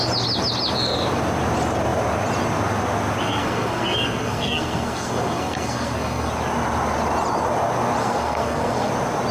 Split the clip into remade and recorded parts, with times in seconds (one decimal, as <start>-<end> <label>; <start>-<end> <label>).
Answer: 0.0-3.2 recorded; 3.2-6.3 remade; 6.3-8.0 recorded; 8.0-8.9 remade; 8.9-9.3 recorded